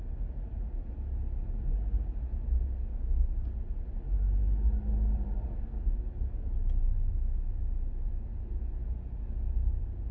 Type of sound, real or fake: real